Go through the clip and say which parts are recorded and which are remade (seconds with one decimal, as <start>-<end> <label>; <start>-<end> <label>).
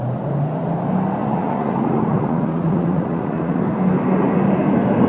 0.0-1.2 recorded; 1.2-3.6 remade; 3.6-5.1 recorded